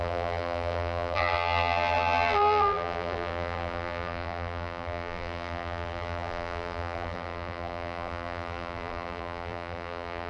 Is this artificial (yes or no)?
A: yes